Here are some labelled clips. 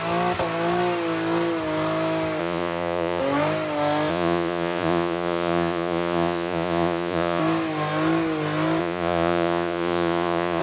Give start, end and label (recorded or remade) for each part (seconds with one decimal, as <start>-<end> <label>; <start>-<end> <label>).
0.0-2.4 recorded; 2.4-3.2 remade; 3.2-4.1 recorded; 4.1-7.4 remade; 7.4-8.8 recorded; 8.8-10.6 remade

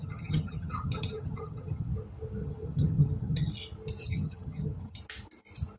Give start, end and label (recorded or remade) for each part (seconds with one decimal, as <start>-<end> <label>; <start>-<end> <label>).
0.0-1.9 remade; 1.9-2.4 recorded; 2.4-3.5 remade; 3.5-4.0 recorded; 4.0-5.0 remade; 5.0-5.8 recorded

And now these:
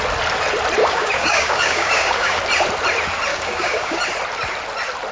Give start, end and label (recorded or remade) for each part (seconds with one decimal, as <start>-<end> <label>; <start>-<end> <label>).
0.0-0.8 recorded; 0.8-2.4 remade; 2.4-3.3 recorded; 3.3-4.0 remade; 4.0-5.1 recorded

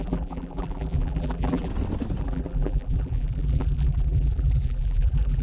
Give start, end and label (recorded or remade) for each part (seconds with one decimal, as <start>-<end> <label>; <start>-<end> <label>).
0.0-1.7 remade; 1.7-2.2 recorded; 2.2-5.4 remade